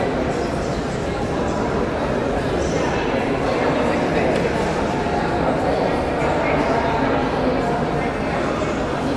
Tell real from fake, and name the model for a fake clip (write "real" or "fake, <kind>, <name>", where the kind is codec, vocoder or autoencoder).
real